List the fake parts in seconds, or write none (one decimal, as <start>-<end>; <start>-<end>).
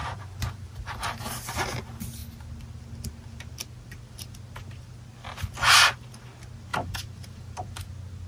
0.0-1.3; 6.7-7.8